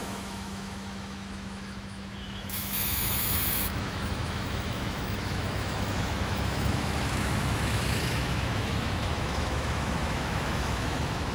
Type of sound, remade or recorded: remade